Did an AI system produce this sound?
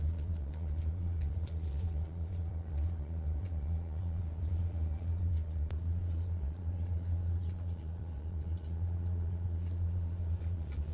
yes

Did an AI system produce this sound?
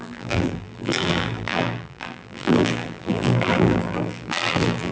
yes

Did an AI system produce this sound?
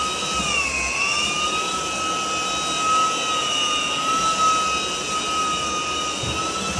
no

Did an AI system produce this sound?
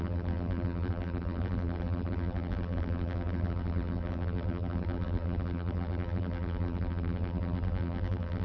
yes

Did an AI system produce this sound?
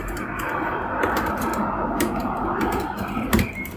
yes